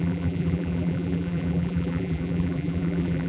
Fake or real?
fake